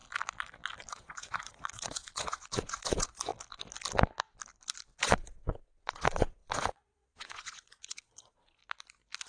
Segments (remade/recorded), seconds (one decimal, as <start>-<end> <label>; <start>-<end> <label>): 0.0-0.9 recorded; 0.9-3.3 remade; 3.3-5.0 recorded; 5.0-8.6 remade; 8.6-9.3 recorded